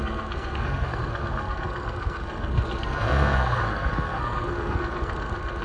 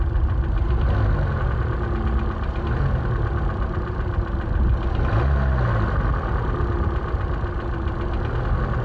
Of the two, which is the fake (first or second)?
first